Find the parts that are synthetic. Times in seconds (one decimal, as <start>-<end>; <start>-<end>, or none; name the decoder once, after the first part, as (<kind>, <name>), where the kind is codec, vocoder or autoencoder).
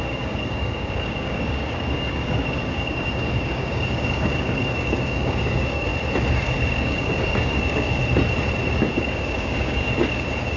0.0-5.9 (codec, DAC); 6.4-8.0; 8.7-10.6